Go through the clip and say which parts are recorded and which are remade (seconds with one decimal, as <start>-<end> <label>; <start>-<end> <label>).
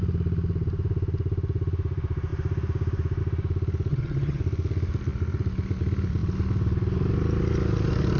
0.0-3.9 recorded; 3.9-4.4 remade; 4.4-8.2 recorded